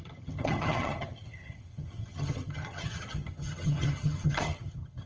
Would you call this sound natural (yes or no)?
no